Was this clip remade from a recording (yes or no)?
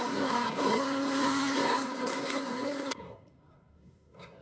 yes